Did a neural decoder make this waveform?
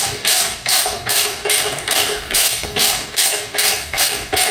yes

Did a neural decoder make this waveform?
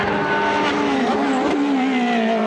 no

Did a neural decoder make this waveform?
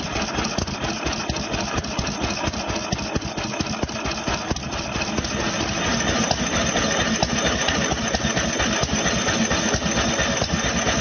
no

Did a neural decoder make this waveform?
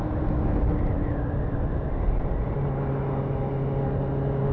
no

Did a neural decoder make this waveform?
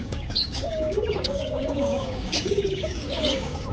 yes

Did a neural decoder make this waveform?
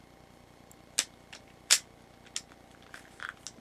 no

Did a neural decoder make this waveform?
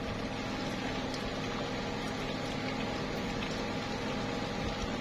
no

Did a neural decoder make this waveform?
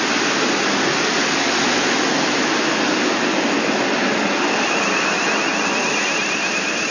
no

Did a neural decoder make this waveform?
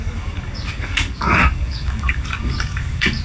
yes